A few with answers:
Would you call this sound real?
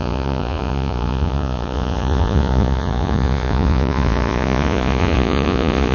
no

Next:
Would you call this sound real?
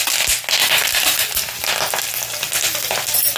yes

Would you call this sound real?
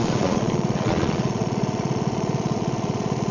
no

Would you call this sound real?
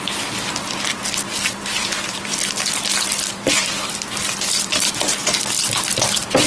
yes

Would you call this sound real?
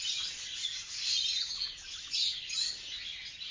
yes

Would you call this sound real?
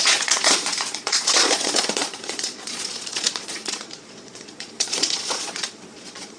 no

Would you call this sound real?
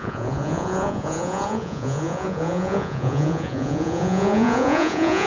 no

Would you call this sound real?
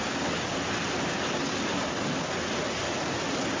yes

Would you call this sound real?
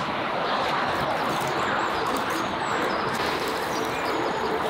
yes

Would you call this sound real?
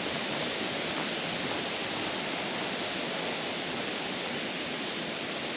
yes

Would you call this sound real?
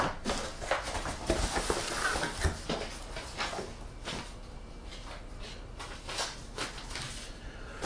yes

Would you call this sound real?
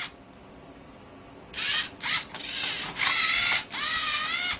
yes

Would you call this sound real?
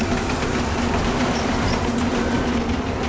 yes